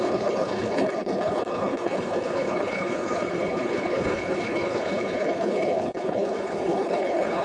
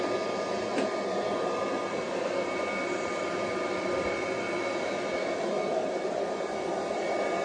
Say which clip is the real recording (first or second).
second